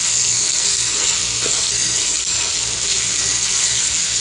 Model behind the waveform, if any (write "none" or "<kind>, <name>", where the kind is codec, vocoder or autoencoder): codec, SNAC